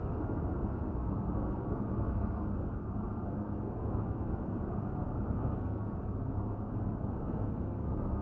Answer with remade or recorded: remade